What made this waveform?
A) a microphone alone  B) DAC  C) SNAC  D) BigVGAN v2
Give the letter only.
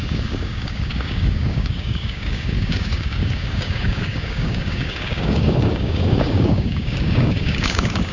B